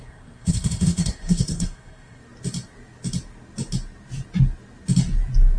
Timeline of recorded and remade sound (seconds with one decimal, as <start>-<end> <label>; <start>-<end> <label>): 0.0-2.2 remade; 2.2-5.6 recorded